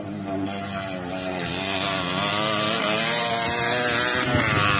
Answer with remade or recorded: recorded